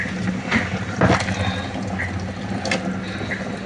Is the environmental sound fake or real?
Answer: real